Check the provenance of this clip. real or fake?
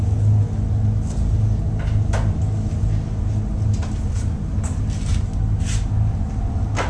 real